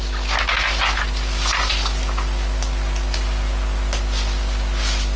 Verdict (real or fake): real